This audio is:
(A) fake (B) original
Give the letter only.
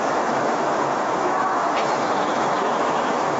A